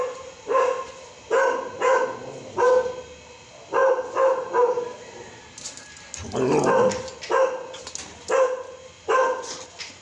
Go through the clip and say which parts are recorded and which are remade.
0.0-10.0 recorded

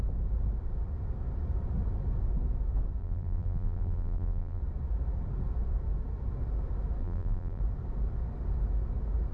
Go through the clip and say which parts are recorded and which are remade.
0.0-3.0 recorded; 3.0-4.6 remade; 4.6-7.0 recorded; 7.0-7.6 remade; 7.6-9.3 recorded